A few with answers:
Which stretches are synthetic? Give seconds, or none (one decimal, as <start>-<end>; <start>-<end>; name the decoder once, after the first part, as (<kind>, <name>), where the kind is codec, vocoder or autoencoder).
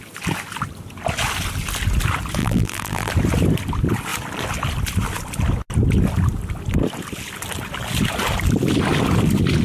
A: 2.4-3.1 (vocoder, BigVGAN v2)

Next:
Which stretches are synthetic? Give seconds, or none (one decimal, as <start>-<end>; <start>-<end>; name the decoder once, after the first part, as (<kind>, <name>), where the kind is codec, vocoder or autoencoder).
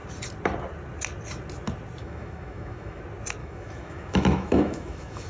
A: 2.0-3.0 (autoencoder, DAC-VAE); 3.4-5.3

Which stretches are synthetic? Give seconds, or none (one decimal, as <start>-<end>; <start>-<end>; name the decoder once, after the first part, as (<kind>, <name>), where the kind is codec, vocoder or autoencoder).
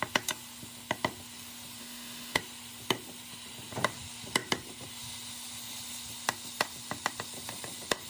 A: 1.8-2.4 (autoencoder, DAC-VAE)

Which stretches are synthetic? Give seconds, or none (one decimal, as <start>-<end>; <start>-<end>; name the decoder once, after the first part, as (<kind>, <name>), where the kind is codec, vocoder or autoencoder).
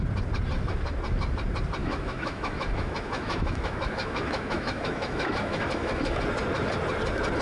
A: 1.8-6.2 (autoencoder, DAC-VAE)